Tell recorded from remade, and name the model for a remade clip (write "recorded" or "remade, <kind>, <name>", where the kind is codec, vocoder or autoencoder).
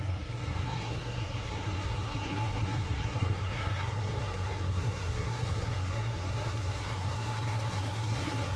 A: remade, codec, SNAC